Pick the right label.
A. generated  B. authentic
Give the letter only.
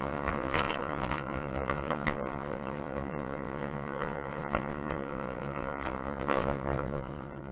A